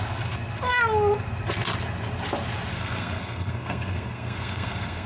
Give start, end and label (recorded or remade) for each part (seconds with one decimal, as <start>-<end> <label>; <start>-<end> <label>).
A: 0.0-2.7 recorded; 2.7-5.1 remade